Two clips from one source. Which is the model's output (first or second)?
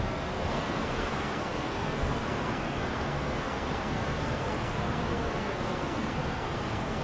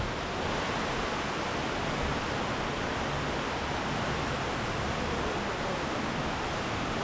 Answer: first